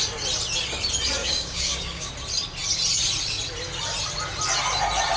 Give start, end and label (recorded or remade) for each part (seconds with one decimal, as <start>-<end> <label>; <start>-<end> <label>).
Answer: 0.0-1.2 recorded; 1.2-2.1 remade; 2.1-5.2 recorded

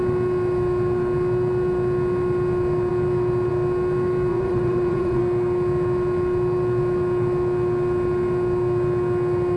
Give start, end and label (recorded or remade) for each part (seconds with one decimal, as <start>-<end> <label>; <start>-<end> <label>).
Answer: 0.0-4.3 recorded; 4.3-5.2 remade; 5.2-9.6 recorded

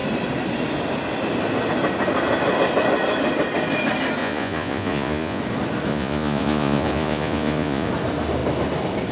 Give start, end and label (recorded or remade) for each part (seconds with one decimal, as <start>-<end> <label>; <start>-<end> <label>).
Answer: 0.0-4.2 recorded; 4.2-5.4 remade; 5.4-5.9 recorded; 5.9-7.9 remade; 7.9-9.1 recorded